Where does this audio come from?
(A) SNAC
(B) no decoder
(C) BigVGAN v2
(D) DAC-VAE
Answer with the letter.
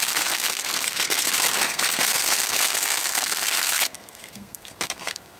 A